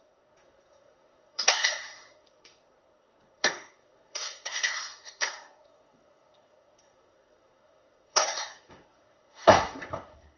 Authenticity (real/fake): fake